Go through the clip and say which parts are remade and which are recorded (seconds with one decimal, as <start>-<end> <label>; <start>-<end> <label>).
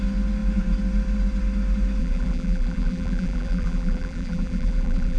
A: 0.0-2.0 recorded; 2.0-5.2 remade